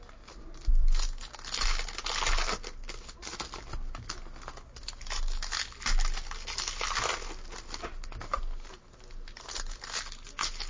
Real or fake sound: real